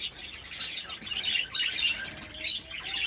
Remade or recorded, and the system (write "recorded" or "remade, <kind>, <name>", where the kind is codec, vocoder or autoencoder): recorded